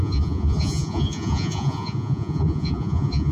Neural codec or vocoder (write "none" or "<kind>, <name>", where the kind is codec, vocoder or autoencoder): vocoder, Vocos